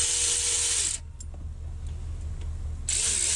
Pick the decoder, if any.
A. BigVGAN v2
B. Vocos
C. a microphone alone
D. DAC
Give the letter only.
C